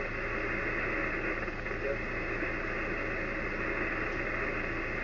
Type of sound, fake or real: real